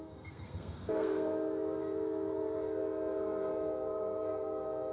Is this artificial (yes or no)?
yes